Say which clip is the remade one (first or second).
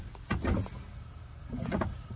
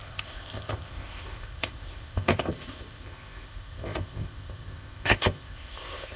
second